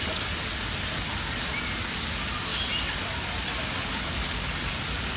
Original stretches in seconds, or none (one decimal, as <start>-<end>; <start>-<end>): 0.0-5.2